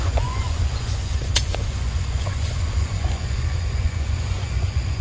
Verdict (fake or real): fake